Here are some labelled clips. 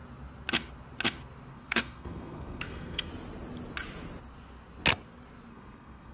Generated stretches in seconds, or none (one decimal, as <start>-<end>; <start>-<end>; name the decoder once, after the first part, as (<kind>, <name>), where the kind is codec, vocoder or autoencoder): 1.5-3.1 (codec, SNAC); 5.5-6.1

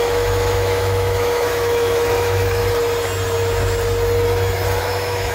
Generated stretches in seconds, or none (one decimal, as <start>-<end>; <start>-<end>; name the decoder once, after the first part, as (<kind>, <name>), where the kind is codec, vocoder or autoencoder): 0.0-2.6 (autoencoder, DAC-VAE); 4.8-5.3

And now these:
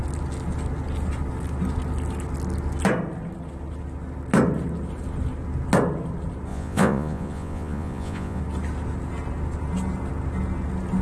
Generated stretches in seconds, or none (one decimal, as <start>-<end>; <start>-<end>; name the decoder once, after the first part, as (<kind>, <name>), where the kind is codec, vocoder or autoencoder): 6.5-8.4 (vocoder, Vocos)